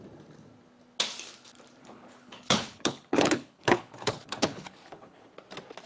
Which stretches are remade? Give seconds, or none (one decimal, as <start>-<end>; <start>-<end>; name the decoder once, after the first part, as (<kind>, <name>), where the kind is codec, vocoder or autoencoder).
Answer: 1.8-5.3 (codec, HILCodec)